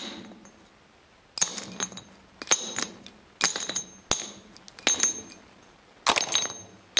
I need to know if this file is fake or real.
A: real